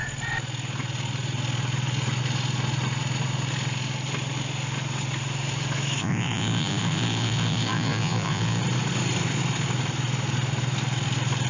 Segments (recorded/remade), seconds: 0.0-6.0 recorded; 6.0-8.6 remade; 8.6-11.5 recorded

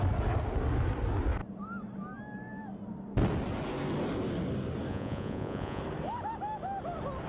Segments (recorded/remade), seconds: 0.0-4.9 recorded; 4.9-5.8 remade; 5.8-7.3 recorded